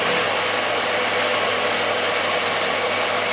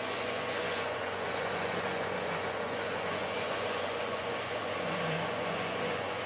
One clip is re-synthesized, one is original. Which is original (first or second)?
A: first